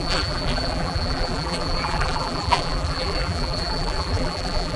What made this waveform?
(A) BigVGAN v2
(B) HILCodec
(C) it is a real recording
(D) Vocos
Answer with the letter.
A